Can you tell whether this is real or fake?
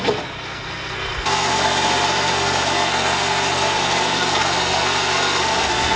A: fake